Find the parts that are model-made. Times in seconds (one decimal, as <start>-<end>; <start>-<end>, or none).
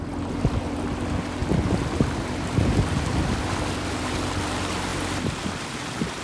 none